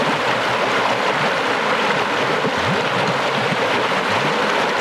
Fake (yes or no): no